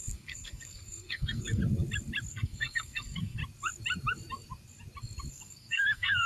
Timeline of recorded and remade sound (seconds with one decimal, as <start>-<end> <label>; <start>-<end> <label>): 0.0-1.6 remade; 1.6-2.3 recorded; 2.3-3.4 remade; 3.4-5.3 recorded; 5.3-6.3 remade